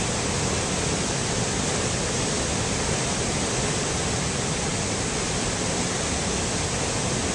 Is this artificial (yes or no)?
no